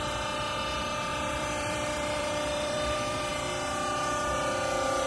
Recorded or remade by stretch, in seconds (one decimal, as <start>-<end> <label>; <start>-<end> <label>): 0.0-1.1 recorded; 1.1-3.3 remade; 3.3-5.1 recorded